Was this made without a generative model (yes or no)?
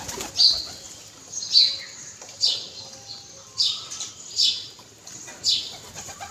no